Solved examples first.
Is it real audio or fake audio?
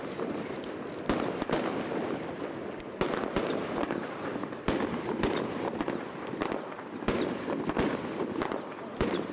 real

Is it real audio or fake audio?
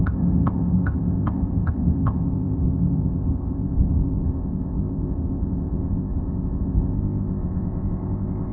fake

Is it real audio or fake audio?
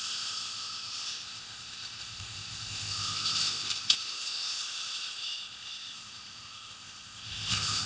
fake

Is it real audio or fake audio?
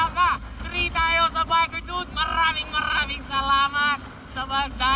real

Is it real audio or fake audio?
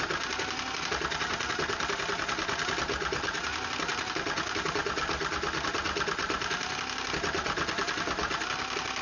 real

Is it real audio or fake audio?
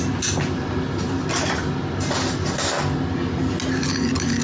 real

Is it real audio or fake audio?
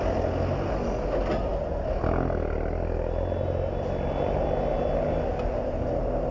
real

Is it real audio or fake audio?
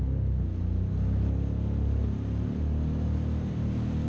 real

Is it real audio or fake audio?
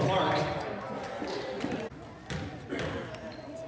real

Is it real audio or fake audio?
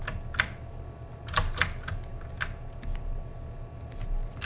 real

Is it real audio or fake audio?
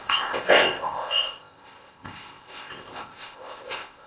fake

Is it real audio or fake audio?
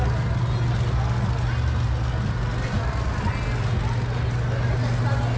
real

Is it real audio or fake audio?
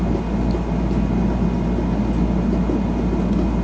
real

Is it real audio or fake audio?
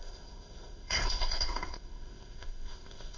fake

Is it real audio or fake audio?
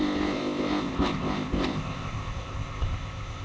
fake